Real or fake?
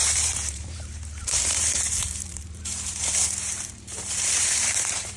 fake